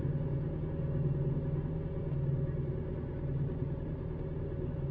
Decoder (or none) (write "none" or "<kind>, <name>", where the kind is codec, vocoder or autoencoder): none